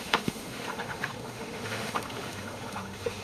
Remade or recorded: remade